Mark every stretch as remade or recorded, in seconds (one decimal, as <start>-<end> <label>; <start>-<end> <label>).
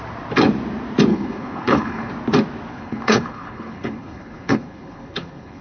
0.0-1.1 recorded; 1.1-2.1 remade; 2.1-2.7 recorded; 2.7-5.6 remade